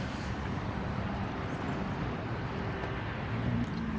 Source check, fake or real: fake